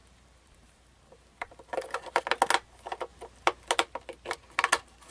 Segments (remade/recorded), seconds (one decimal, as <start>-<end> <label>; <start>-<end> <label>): 0.0-2.2 remade; 2.2-5.1 recorded